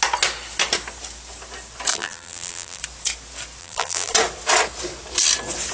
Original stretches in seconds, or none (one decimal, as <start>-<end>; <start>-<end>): 0.0-1.9; 2.8-3.6; 4.1-5.7